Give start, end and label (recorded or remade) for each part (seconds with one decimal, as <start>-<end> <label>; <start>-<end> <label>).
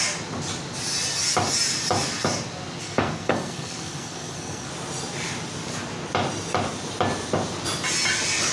0.0-2.8 recorded; 2.8-4.7 remade; 4.7-8.5 recorded